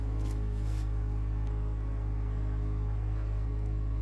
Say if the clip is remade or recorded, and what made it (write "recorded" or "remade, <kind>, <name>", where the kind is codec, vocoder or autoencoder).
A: remade, codec, SNAC